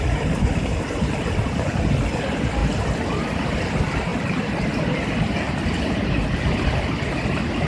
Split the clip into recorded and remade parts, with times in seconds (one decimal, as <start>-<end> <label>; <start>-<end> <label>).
0.0-7.7 recorded

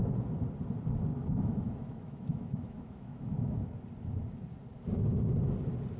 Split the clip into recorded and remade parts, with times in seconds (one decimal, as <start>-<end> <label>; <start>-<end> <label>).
0.0-1.1 recorded; 1.1-3.5 remade; 3.5-6.0 recorded

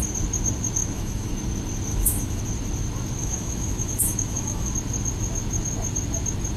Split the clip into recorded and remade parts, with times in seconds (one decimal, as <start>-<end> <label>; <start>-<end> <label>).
0.0-0.8 recorded; 0.8-1.3 remade; 1.3-1.9 recorded; 1.9-2.4 remade; 2.4-3.2 recorded; 3.2-4.7 remade; 4.7-6.6 recorded

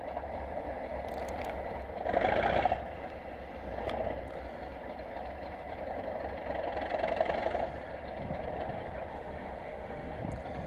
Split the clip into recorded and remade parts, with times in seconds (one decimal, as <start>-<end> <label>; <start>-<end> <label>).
0.0-9.1 recorded; 9.1-10.2 remade; 10.2-10.7 recorded

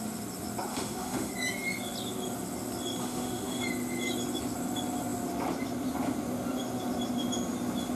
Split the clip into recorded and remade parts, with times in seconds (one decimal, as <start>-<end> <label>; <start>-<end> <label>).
0.0-0.7 recorded; 0.7-1.3 remade; 1.3-3.0 recorded; 3.0-3.6 remade; 3.6-8.0 recorded

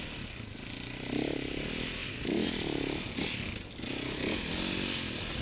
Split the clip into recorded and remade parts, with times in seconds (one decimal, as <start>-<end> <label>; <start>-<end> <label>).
0.0-5.4 recorded

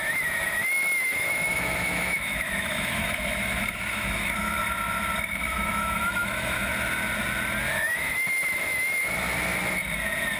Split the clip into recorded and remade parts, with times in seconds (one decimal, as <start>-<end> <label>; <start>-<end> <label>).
0.0-4.6 remade; 4.6-5.2 recorded; 5.2-6.7 remade; 6.7-7.7 recorded; 7.7-9.0 remade; 9.0-10.4 recorded

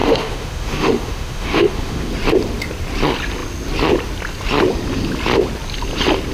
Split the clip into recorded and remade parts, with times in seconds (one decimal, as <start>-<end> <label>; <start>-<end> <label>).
0.0-2.1 remade; 2.1-6.3 recorded